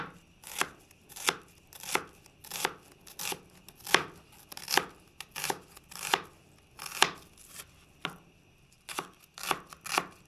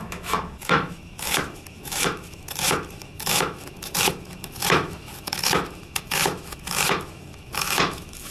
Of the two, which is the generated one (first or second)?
second